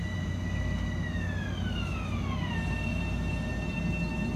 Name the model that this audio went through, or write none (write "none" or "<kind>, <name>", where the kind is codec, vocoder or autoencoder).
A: none